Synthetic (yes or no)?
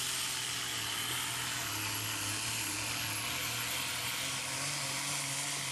no